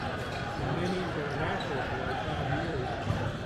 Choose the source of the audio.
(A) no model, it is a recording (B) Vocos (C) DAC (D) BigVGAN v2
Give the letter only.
D